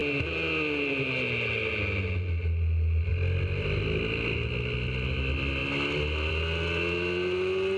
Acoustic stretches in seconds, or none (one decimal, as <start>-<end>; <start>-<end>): 0.0-7.8

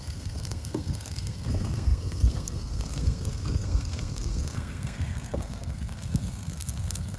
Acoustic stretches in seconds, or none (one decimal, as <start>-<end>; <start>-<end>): none

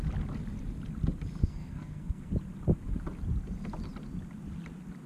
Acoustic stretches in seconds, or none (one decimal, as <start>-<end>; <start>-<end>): 0.0-1.4; 2.3-5.1

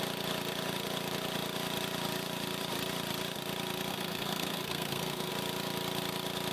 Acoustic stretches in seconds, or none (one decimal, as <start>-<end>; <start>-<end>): 0.0-3.9; 5.3-6.5

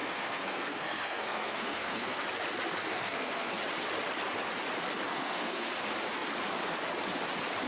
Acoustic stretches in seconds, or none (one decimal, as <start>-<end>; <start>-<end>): 2.2-2.9; 3.5-5.1; 5.7-7.7